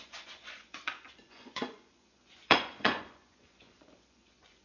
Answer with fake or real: fake